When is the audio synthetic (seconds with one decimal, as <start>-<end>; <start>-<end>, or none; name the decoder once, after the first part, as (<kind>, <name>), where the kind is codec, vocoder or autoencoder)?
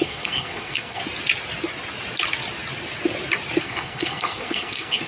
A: 0.0-1.0 (codec, SNAC); 3.6-5.1